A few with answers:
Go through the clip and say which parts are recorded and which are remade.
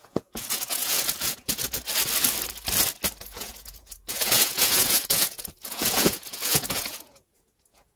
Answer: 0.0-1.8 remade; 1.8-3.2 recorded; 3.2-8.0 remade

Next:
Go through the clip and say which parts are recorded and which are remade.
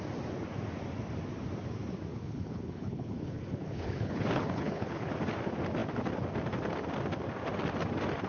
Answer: 0.0-2.1 recorded; 2.1-5.1 remade; 5.1-8.3 recorded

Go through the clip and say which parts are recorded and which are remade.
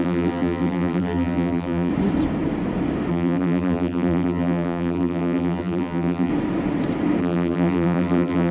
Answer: 0.0-1.9 remade; 1.9-3.1 recorded; 3.1-6.3 remade; 6.3-7.2 recorded; 7.2-8.5 remade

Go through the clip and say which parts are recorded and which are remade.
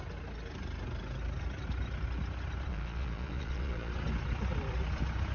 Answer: 0.0-2.7 recorded; 2.7-3.9 remade; 3.9-5.3 recorded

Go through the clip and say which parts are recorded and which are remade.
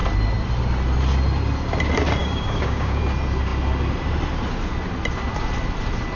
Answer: 0.0-2.2 recorded; 2.2-3.0 remade; 3.0-6.2 recorded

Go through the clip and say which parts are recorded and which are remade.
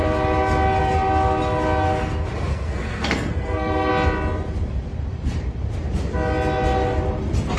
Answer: 0.0-2.5 recorded; 2.5-3.9 remade; 3.9-7.6 recorded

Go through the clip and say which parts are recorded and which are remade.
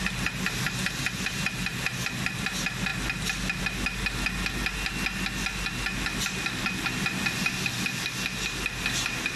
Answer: 0.0-9.4 recorded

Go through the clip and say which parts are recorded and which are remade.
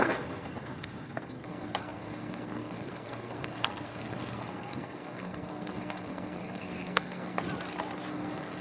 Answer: 0.0-7.4 remade; 7.4-8.1 recorded; 8.1-8.6 remade